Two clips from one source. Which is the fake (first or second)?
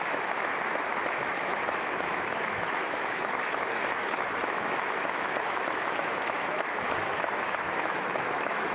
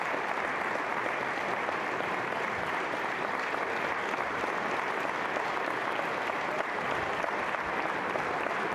first